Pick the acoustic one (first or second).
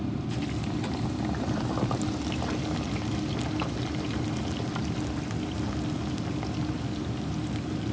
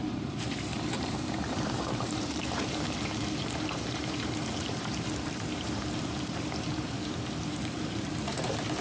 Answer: first